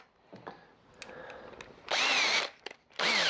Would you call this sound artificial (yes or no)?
no